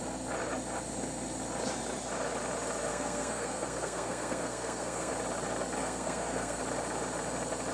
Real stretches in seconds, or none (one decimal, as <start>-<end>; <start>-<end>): 0.0-2.9; 5.1-5.8; 6.6-7.7